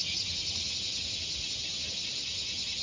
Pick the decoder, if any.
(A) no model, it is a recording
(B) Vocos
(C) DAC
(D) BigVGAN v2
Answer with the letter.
A